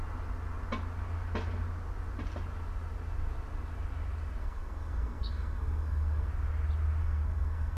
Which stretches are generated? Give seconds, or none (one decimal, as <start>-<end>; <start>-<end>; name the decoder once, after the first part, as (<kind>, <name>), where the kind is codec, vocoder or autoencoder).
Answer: 4.4-6.3 (codec, SNAC); 7.0-7.8